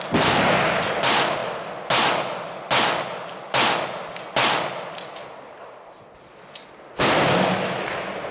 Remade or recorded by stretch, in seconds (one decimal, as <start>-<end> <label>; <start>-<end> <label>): 0.0-8.3 recorded